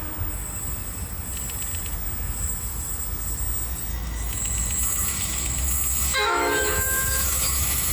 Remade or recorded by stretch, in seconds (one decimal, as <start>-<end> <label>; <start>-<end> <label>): 0.0-3.9 recorded; 3.9-7.9 remade